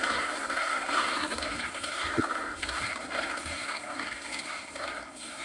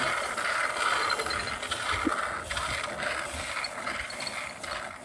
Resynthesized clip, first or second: first